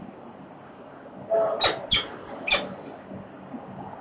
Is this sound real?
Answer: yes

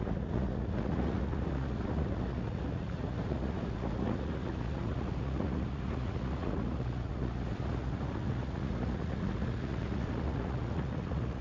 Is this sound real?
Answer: no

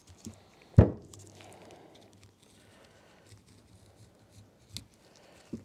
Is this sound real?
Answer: yes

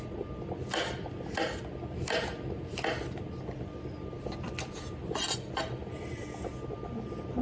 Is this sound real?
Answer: yes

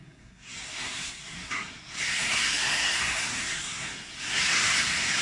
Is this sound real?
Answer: no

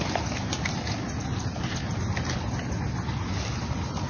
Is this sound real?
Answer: yes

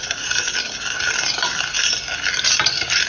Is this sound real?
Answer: yes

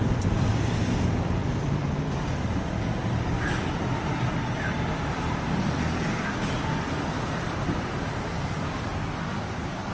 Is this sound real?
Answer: no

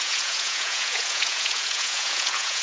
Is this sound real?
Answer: no